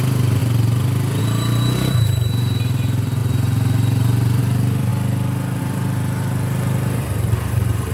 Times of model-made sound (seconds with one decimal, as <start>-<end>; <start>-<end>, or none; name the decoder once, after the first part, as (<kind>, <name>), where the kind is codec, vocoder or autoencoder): 0.0-0.4 (vocoder, BigVGAN v2); 1.2-3.2; 4.4-4.9; 5.6-7.9